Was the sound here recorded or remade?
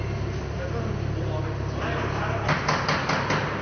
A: recorded